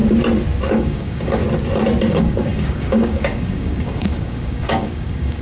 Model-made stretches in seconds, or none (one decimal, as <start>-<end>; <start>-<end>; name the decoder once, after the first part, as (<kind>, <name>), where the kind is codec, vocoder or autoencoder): 0.7-1.4 (codec, DAC); 2.1-5.4